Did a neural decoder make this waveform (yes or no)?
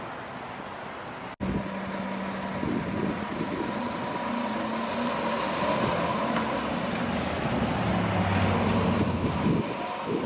no